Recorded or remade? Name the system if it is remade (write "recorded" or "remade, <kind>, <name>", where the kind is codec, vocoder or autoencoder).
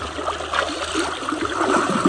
recorded